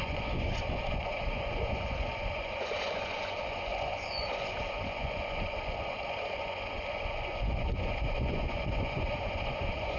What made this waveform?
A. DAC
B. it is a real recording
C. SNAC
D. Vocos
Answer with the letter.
D